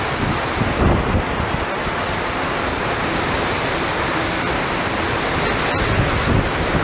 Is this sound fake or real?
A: real